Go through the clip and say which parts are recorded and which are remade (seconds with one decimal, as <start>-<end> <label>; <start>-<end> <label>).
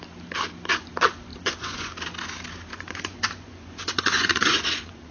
0.0-1.3 recorded; 1.3-1.9 remade; 1.9-2.7 recorded; 2.7-5.1 remade